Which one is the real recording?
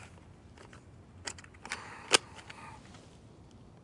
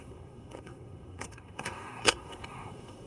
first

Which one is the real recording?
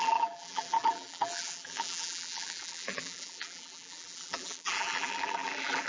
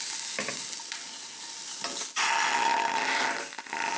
second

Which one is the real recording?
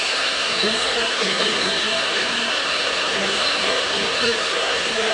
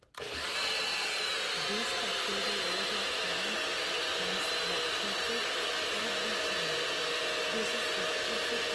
second